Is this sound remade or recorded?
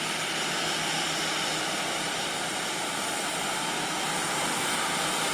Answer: recorded